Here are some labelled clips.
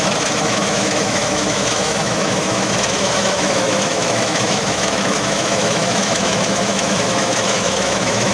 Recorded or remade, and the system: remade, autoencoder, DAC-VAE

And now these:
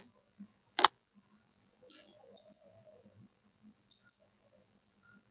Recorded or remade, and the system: remade, vocoder, BigVGAN v2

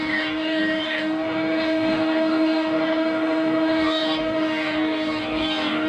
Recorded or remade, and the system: remade, codec, DAC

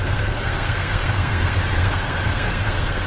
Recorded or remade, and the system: remade, codec, SNAC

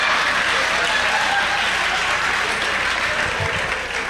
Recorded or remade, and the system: recorded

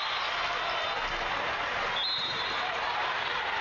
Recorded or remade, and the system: recorded